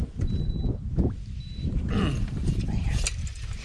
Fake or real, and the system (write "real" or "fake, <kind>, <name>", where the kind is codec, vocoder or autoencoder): real